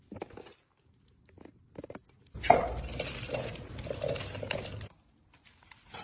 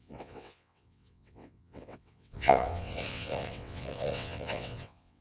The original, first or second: first